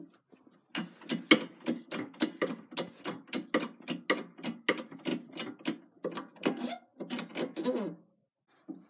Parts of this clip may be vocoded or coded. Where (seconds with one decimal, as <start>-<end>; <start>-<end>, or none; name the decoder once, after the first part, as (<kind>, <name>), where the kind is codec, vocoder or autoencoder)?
none